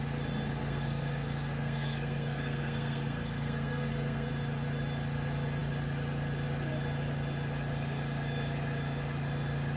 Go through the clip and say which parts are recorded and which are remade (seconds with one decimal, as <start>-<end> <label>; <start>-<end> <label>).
0.0-0.6 recorded; 0.6-4.3 remade; 4.3-9.8 recorded